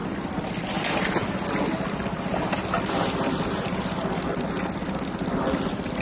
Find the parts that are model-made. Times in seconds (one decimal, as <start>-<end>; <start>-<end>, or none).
none